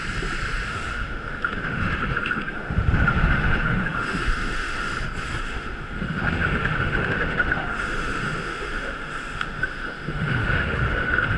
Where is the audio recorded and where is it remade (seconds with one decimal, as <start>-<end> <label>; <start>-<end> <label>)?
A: 0.0-0.7 recorded; 0.7-4.9 remade; 4.9-5.4 recorded; 5.4-11.4 remade